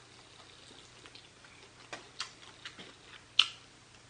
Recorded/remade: recorded